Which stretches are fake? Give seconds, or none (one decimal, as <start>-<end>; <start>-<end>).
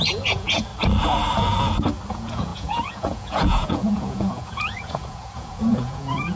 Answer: 0.0-0.7; 2.1-6.4